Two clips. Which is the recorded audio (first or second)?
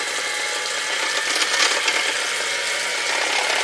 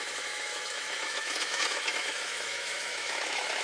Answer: first